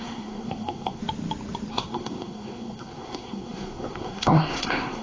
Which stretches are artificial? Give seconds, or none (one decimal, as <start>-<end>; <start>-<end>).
0.0-1.0; 1.7-5.0